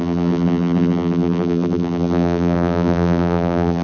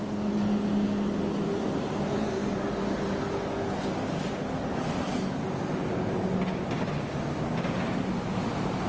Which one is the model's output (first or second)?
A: first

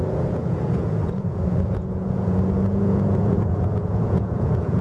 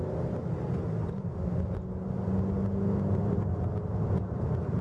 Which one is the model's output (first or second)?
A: first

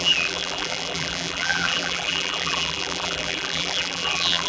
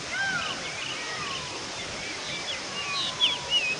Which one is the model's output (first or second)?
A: first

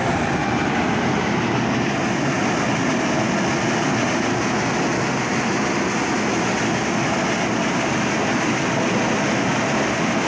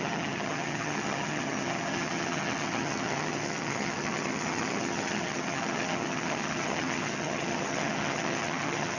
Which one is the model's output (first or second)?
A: second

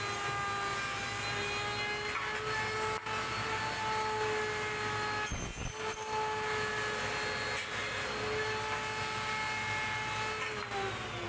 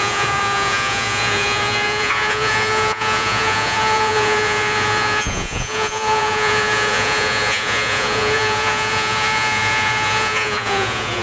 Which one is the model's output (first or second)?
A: second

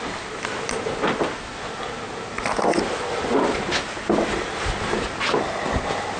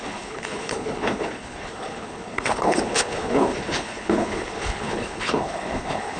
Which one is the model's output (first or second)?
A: second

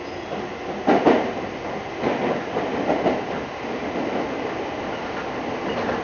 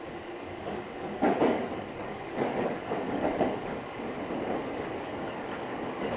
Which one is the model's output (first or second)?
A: second